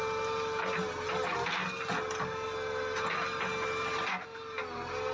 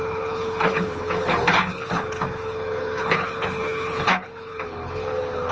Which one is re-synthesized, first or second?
second